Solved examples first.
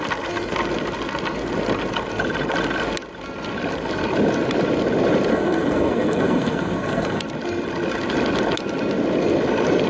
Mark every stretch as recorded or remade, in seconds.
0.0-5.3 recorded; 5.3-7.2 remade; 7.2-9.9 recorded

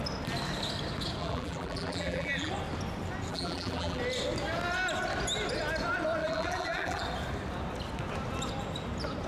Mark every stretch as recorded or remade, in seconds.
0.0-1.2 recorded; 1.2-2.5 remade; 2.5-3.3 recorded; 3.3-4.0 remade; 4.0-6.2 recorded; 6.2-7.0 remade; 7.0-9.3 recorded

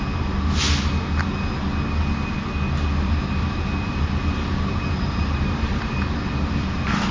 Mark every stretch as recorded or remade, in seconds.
0.0-3.4 recorded; 3.4-7.1 remade